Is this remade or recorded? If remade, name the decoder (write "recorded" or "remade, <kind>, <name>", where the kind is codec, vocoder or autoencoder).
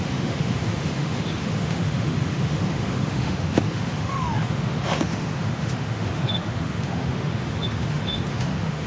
remade, autoencoder, DAC-VAE